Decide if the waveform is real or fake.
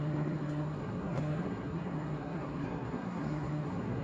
fake